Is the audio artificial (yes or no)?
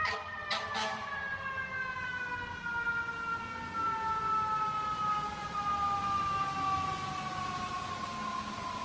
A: no